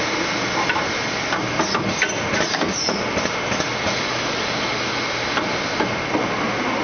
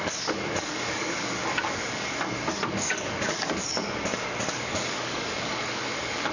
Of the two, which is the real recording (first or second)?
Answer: first